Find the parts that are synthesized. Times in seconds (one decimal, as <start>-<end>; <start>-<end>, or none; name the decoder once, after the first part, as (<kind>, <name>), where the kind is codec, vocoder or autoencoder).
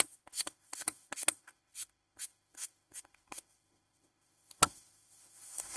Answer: 0.0-5.8 (autoencoder, DAC-VAE)